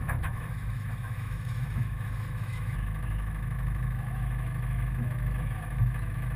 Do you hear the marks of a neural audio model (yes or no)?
yes